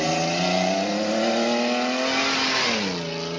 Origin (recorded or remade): recorded